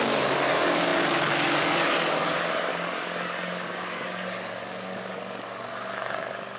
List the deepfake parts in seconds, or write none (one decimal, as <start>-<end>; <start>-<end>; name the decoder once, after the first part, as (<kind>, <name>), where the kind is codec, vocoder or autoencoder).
0.0-6.6 (codec, DAC)